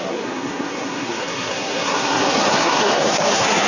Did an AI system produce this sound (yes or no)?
yes